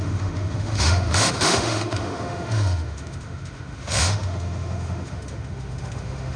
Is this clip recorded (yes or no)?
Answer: no